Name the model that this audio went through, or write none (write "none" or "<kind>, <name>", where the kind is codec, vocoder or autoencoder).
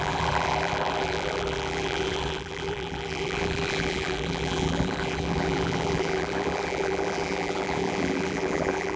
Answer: vocoder, BigVGAN v2